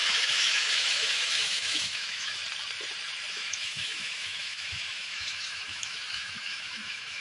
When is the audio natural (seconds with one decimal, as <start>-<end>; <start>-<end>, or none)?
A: 2.4-3.3